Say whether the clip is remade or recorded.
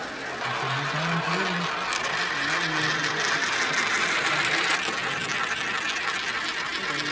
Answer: recorded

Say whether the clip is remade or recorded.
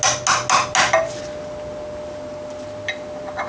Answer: recorded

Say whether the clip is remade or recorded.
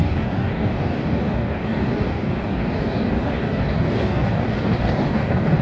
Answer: remade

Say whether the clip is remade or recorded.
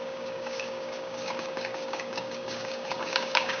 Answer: remade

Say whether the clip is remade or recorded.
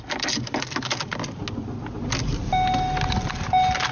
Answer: recorded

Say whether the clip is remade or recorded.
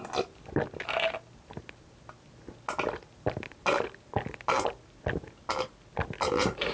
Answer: recorded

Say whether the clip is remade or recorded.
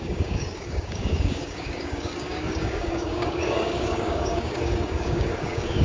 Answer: remade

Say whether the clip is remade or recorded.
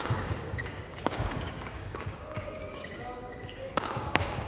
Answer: remade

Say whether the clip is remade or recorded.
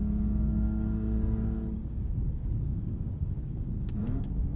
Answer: remade